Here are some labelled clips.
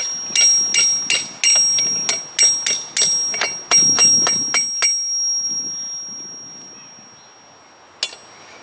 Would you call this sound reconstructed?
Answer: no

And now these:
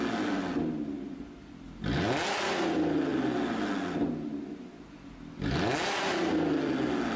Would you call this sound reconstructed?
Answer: no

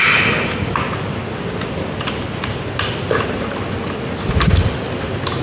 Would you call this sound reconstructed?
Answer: no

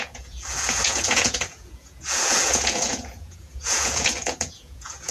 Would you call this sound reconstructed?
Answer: yes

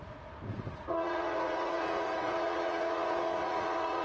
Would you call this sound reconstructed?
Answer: yes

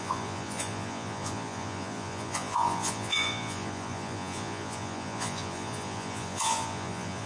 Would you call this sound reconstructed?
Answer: yes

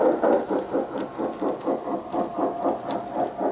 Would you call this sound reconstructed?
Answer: no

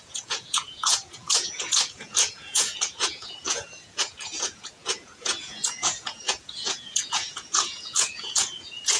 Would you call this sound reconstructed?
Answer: yes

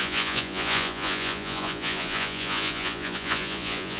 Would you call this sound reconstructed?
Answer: yes